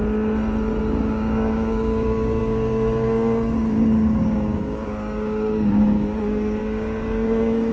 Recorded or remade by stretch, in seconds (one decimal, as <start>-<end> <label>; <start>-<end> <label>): 0.0-0.8 recorded; 0.8-7.7 remade